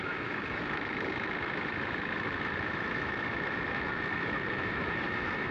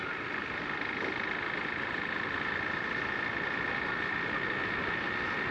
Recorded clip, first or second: second